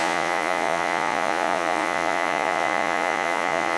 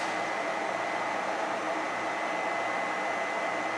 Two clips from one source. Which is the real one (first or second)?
second